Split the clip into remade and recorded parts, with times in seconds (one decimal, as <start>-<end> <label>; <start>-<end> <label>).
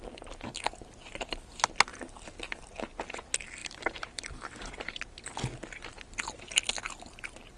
0.0-3.6 recorded; 3.6-5.0 remade; 5.0-7.6 recorded